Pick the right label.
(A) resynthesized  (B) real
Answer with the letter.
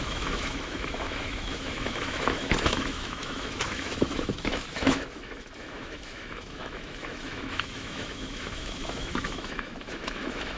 A